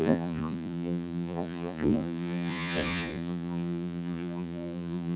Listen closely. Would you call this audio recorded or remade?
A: remade